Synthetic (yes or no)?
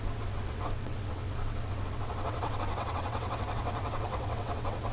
yes